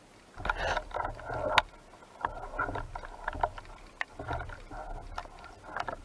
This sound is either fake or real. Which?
real